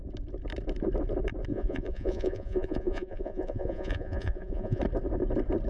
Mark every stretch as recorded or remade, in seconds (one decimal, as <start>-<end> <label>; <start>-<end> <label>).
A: 0.0-1.5 recorded; 1.5-4.8 remade; 4.8-5.7 recorded